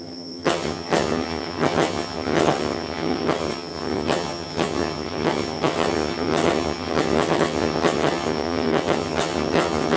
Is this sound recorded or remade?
remade